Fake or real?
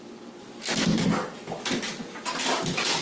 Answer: real